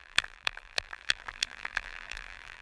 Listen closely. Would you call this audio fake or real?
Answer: fake